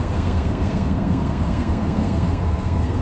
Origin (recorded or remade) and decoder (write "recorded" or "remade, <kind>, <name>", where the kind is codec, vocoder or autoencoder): remade, codec, SNAC